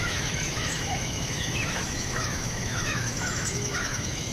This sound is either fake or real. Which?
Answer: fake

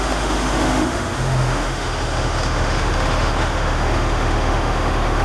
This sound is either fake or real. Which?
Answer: fake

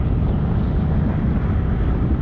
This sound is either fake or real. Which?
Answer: real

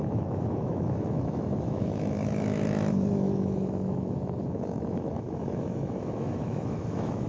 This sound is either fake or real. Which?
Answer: fake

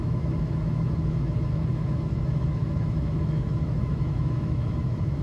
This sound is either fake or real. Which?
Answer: fake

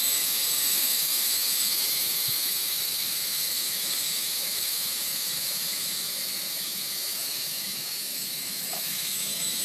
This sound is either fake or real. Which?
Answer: fake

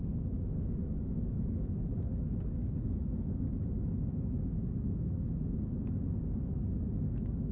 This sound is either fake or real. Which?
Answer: fake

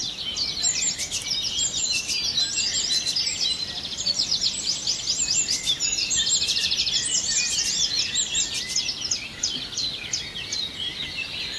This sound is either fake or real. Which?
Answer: real